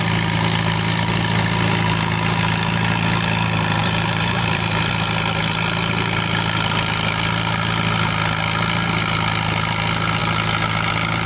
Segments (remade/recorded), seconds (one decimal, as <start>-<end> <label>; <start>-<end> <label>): 0.0-3.8 recorded; 3.8-4.9 remade; 4.9-11.3 recorded